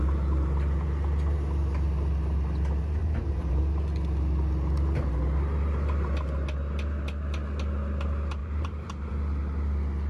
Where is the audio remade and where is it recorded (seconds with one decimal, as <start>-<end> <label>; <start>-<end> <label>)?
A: 0.0-3.0 recorded; 3.0-3.6 remade; 3.6-8.4 recorded; 8.4-9.1 remade; 9.1-10.1 recorded